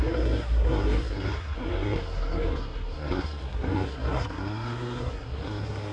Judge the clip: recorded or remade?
remade